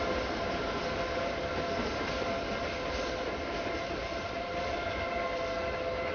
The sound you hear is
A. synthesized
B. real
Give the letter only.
B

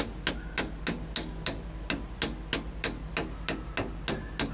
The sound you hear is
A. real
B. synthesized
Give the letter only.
A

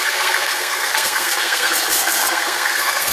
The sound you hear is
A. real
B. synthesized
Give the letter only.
B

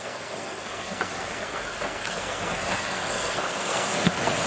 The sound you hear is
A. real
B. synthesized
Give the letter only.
B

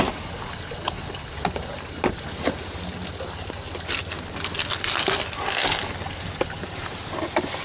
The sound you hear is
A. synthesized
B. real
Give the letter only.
B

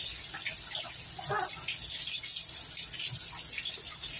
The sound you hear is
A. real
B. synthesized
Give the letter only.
A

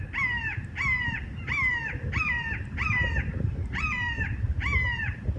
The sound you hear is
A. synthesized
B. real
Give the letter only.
B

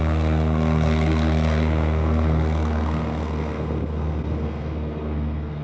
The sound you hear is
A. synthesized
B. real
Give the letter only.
A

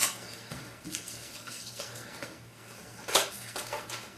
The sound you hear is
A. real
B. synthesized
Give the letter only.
B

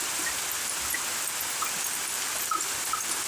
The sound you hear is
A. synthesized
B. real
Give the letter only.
B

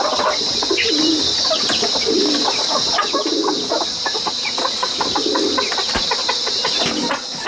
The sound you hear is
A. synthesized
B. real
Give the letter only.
B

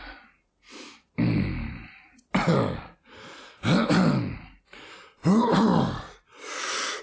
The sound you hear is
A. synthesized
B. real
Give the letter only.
B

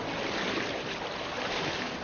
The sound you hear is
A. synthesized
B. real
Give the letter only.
B